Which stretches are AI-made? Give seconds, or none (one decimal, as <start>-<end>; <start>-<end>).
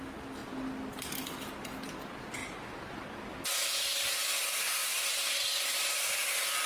2.4-3.4